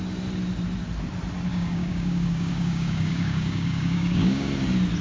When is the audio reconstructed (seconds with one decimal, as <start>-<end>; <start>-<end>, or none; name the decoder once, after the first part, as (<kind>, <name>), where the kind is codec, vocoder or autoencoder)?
1.5-4.5 (codec, DAC)